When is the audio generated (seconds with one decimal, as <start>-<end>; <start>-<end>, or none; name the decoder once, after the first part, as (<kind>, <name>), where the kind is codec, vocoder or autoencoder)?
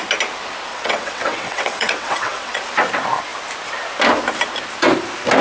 0.7-2.6 (vocoder, WaveNeXt)